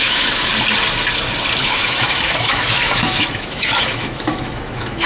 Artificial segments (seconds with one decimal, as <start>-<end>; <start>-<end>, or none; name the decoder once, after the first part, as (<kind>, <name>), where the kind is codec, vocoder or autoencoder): 0.0-0.5 (autoencoder, DAC-VAE); 1.6-5.1